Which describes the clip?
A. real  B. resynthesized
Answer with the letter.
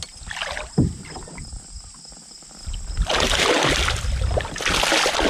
A